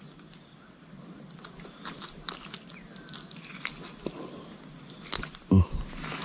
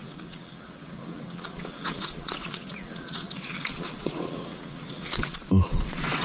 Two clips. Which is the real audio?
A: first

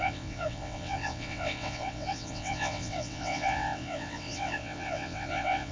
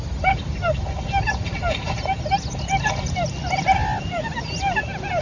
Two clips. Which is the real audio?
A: second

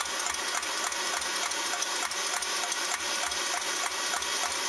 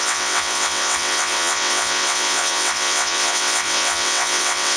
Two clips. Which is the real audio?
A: first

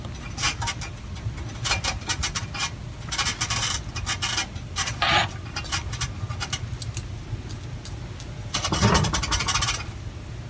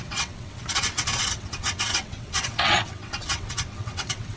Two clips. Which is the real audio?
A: first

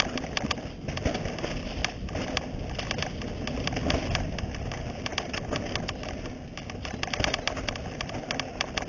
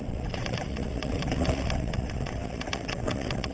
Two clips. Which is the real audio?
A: first